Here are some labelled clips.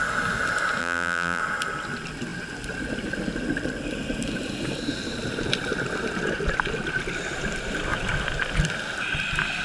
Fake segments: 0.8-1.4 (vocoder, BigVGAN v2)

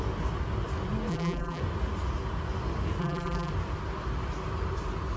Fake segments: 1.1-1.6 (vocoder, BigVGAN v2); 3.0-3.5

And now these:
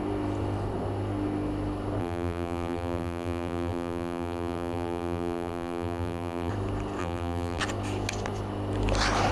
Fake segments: 2.0-6.5 (vocoder, BigVGAN v2); 7.0-7.6